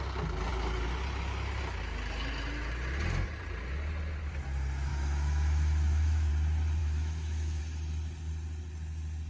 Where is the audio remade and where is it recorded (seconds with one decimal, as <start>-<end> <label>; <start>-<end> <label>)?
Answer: 0.0-4.9 recorded; 4.9-6.3 remade; 6.3-6.8 recorded; 6.8-7.6 remade; 7.6-9.3 recorded